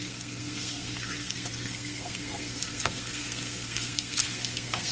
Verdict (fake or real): fake